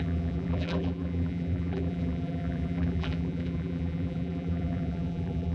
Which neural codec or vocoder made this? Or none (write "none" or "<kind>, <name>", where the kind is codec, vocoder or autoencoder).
vocoder, BigVGAN v2